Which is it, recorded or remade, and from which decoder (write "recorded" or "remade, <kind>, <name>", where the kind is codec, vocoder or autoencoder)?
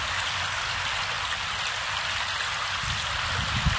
recorded